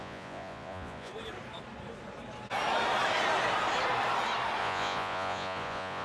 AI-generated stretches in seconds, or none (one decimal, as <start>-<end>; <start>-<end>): 0.0-1.1; 4.6-6.0